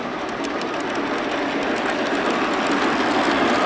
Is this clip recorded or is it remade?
recorded